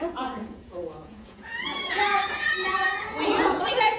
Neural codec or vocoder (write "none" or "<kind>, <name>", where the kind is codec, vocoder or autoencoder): vocoder, Vocos